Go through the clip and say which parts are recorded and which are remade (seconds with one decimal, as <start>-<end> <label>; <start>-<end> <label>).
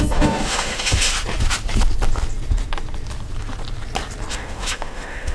0.0-1.1 remade; 1.1-4.3 recorded; 4.3-5.3 remade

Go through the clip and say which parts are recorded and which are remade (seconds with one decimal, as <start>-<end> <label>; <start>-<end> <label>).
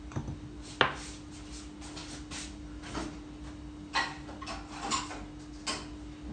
0.0-6.3 recorded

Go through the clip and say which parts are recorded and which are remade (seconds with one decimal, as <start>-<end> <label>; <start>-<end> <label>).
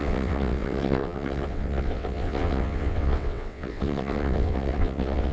0.0-5.3 remade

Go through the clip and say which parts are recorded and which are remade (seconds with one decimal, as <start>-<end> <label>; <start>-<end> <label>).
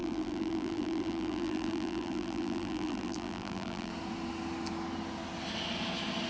0.0-3.9 remade; 3.9-6.3 recorded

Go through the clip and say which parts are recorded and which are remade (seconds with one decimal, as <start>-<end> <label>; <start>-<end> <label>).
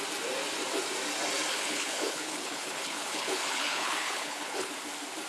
0.0-1.5 recorded; 1.5-4.7 remade; 4.7-5.3 recorded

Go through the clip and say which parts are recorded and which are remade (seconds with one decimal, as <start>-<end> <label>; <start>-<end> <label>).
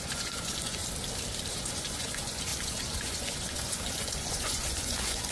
0.0-0.8 remade; 0.8-1.5 recorded; 1.5-5.3 remade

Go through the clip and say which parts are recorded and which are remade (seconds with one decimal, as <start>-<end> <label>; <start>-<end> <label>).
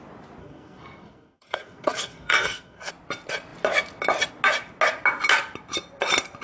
0.0-0.4 recorded; 0.4-2.9 remade; 2.9-6.4 recorded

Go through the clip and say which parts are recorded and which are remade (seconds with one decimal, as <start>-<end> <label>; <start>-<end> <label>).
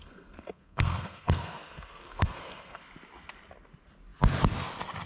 0.0-2.8 remade; 2.8-5.1 recorded